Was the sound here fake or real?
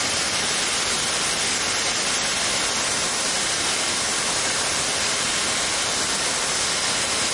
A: real